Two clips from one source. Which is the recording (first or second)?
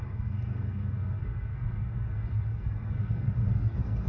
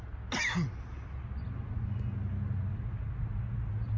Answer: second